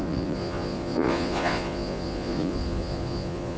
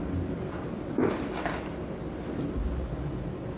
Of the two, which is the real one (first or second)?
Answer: second